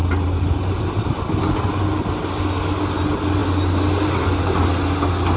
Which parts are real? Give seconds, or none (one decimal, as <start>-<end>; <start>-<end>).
1.8-5.4